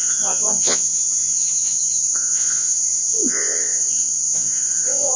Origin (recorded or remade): remade